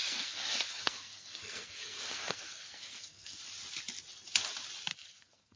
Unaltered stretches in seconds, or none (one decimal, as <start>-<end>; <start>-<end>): 3.4-4.9